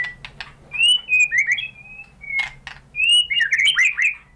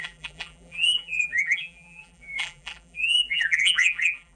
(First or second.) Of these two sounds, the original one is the first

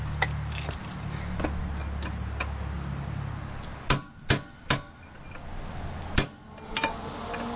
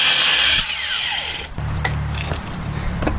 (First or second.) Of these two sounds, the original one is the first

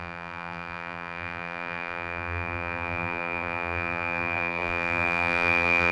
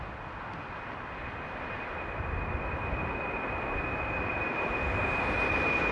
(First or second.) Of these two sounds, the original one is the second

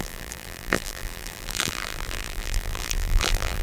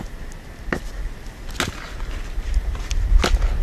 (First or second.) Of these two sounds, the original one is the second